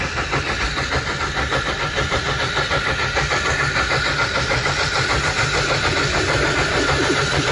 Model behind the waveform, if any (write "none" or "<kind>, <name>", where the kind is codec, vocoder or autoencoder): none